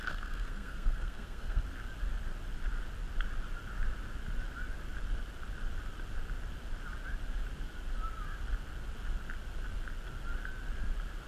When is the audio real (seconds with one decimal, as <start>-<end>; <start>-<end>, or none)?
1.6-11.3